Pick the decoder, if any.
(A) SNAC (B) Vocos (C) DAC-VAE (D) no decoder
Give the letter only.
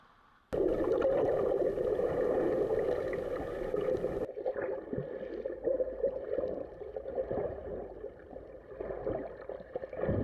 D